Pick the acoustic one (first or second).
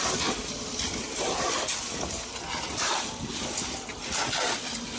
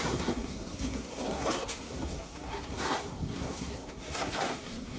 first